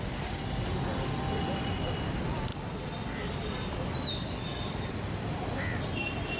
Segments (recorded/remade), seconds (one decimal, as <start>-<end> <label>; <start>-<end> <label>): 0.0-2.5 remade; 2.5-4.1 recorded; 4.1-6.4 remade